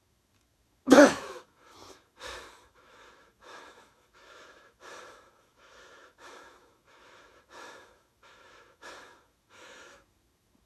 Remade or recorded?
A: remade